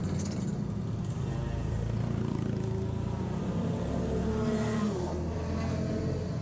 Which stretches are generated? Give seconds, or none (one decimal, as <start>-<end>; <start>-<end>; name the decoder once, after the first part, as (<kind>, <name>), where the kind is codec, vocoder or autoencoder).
none